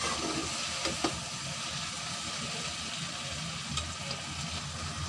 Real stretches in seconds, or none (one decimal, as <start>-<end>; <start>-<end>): 0.0-5.1